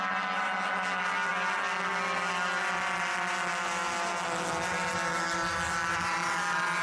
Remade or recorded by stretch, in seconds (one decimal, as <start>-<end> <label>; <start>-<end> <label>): 0.0-6.8 recorded